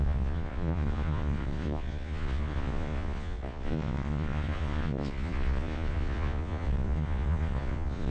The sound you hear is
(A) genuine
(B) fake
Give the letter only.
B